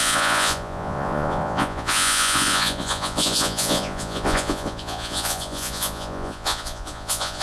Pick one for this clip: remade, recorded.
remade